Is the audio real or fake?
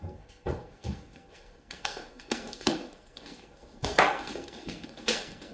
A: fake